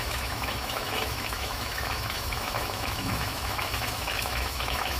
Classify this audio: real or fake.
fake